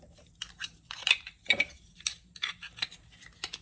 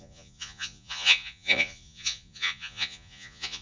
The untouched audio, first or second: first